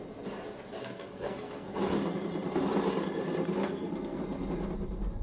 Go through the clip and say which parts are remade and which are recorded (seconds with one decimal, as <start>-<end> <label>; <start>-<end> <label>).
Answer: 0.0-0.8 recorded; 0.8-1.8 remade; 1.8-3.6 recorded; 3.6-4.2 remade; 4.2-5.2 recorded